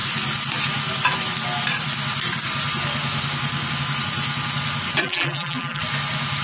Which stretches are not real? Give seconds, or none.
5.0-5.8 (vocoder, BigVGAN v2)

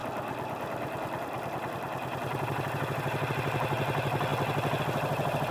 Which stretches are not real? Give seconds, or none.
none

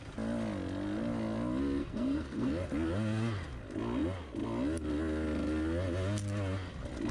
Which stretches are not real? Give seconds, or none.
1.8-2.5 (codec, SNAC)

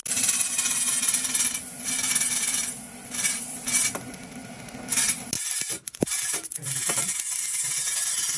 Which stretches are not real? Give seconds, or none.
none

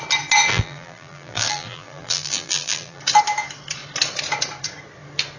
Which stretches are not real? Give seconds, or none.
0.5-3.0 (vocoder, BigVGAN v2)

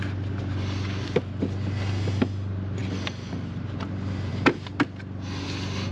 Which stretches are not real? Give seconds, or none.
none

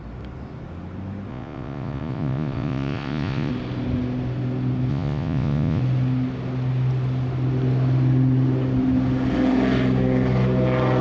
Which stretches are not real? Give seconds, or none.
1.3-3.5 (vocoder, Vocos); 4.9-5.8

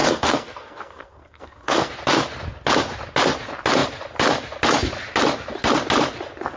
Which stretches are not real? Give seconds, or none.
0.0-1.9 (codec, SNAC)